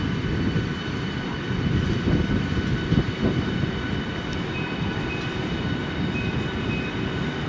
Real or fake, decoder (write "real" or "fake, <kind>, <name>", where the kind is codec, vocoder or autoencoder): real